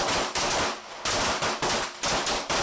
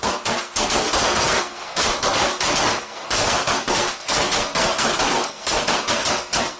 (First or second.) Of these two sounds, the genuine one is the first